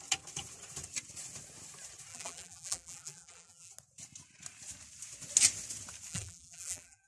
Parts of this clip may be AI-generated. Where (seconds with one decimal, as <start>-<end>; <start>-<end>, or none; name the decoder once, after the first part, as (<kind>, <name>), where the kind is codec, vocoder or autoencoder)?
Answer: 2.1-3.7 (vocoder, BigVGAN v2); 6.1-7.1